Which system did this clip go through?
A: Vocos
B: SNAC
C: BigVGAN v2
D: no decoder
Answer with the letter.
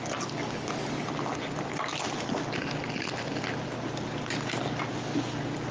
D